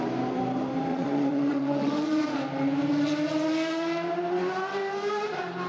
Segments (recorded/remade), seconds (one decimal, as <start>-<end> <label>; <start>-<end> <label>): 0.0-0.9 recorded; 0.9-2.2 remade; 2.2-5.7 recorded